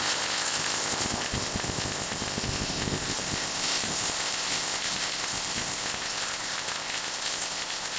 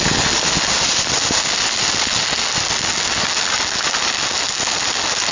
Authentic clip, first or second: second